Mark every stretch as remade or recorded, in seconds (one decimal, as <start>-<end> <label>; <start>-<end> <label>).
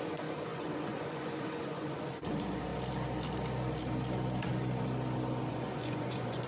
0.0-2.7 remade; 2.7-5.5 recorded; 5.5-6.5 remade